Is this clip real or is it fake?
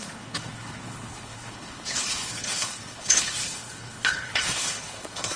fake